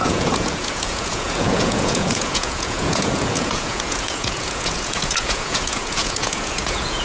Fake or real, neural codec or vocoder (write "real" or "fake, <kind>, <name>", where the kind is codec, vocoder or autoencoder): fake, vocoder, Vocos